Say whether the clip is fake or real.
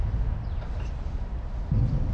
real